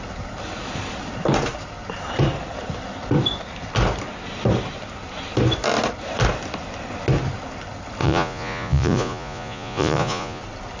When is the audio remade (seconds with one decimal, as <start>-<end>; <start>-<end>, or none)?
8.0-10.4